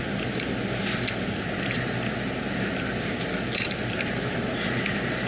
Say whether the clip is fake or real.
real